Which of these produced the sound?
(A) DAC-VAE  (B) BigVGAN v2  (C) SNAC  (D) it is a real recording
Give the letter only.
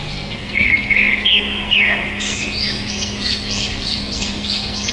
C